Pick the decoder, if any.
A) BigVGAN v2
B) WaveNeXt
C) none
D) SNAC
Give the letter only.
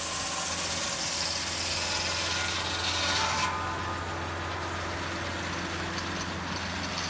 C